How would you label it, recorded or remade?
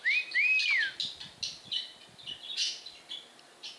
recorded